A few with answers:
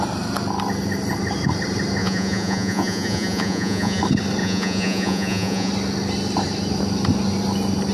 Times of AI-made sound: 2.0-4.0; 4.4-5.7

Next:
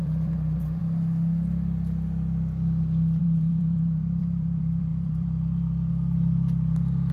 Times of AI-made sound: 0.0-0.8; 3.2-7.1

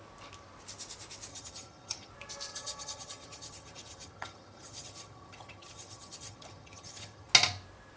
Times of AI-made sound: 1.3-2.1; 2.5-7.3

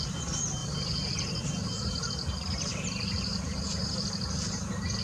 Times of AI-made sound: 0.6-1.5; 2.7-3.6

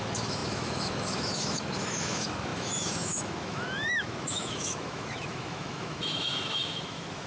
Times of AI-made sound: 0.0-7.3